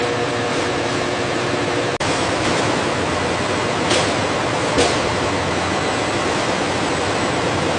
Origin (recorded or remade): recorded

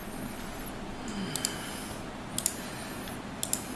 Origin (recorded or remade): recorded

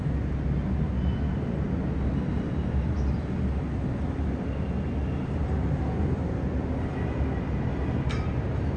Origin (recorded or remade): recorded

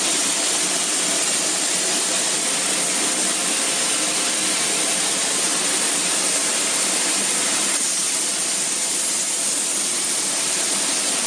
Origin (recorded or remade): recorded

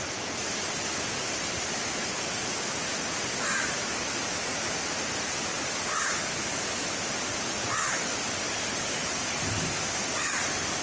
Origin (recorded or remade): recorded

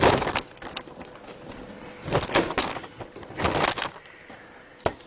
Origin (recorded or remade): recorded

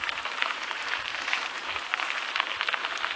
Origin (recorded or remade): remade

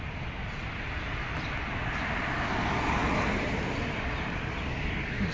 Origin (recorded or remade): recorded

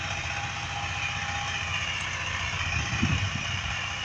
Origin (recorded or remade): recorded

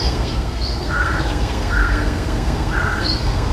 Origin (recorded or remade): remade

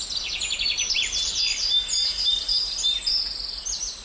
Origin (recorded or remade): recorded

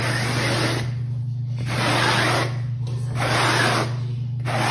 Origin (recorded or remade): recorded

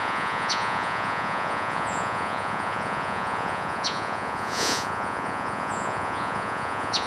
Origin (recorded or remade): remade